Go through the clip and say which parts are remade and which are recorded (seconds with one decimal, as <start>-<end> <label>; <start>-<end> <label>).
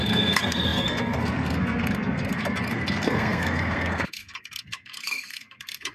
0.0-5.9 remade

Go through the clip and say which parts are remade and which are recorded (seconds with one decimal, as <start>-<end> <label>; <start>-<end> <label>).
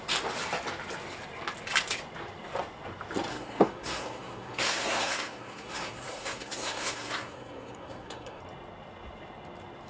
0.0-3.3 recorded; 3.3-8.4 remade; 8.4-9.9 recorded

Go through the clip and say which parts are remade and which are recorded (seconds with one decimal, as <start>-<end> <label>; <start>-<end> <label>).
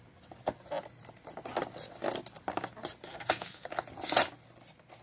0.0-3.1 recorded; 3.1-3.7 remade; 3.7-5.0 recorded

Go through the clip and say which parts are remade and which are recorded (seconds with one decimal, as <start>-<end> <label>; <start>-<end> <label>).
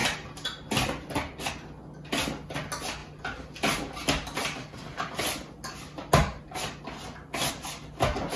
0.0-8.4 recorded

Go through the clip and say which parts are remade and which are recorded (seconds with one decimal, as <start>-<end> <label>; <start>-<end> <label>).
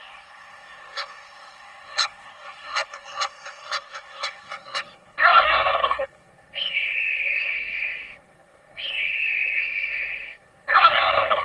0.0-11.4 remade